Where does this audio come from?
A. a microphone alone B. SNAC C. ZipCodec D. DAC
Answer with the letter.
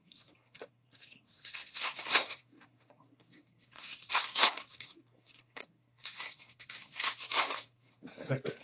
B